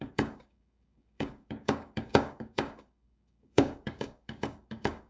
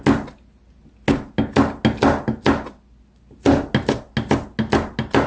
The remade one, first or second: first